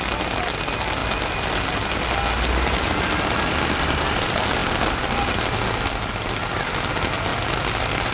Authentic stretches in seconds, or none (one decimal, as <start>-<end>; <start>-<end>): 0.0-8.1